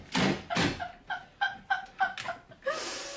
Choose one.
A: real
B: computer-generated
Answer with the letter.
A